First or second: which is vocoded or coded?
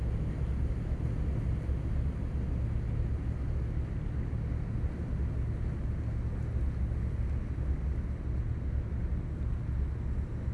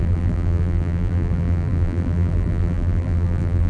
second